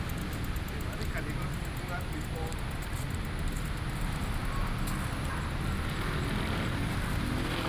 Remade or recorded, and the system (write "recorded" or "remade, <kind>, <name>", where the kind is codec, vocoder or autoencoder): recorded